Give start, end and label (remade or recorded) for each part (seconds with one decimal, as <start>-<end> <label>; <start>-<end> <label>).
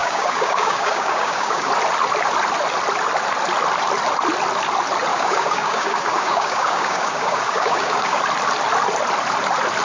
0.0-1.7 remade; 1.7-5.1 recorded; 5.1-8.2 remade; 8.2-9.8 recorded